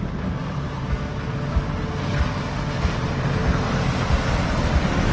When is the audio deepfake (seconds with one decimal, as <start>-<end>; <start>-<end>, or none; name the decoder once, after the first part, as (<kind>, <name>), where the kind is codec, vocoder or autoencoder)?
3.4-4.3 (vocoder, BigVGAN v2)